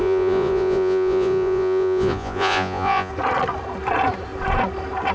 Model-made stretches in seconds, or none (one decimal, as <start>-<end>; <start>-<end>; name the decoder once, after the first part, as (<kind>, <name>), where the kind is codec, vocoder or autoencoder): 0.0-3.1 (vocoder, Vocos)